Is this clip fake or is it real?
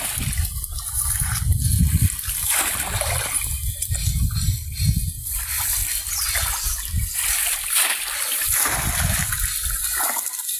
real